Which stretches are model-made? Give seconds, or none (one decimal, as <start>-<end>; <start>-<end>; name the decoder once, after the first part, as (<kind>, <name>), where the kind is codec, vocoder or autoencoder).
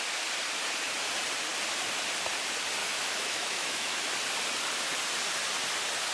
2.8-4.1 (autoencoder, DAC-VAE)